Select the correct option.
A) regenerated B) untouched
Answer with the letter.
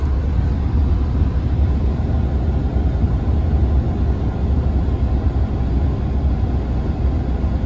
B